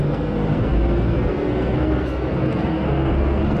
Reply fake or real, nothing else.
fake